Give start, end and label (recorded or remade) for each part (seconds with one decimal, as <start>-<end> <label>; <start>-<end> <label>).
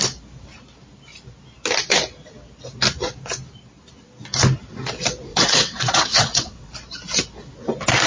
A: 0.0-5.3 recorded; 5.3-6.7 remade; 6.7-8.1 recorded